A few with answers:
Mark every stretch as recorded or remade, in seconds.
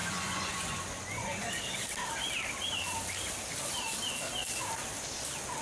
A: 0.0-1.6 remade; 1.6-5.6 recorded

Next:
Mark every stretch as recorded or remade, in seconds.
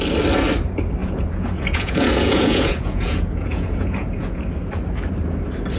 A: 0.0-1.0 recorded; 1.0-4.4 remade; 4.4-5.8 recorded